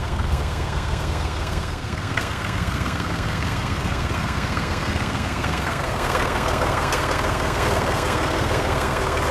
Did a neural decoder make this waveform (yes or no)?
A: yes